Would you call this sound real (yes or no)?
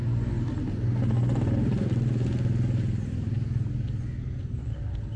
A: yes